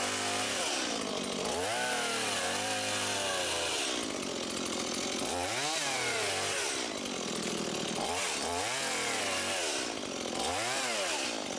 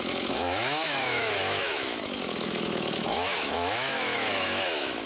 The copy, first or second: second